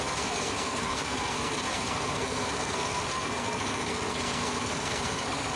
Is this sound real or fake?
fake